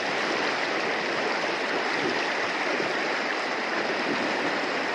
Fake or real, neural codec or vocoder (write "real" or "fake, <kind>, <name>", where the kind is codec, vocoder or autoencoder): real